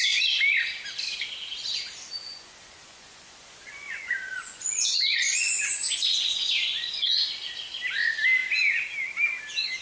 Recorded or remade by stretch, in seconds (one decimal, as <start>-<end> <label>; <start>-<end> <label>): 0.0-2.2 recorded; 2.2-7.2 remade; 7.2-9.8 recorded